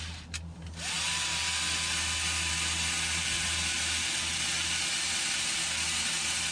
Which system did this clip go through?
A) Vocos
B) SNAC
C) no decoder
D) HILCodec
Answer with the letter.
C